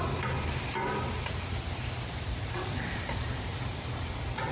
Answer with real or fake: fake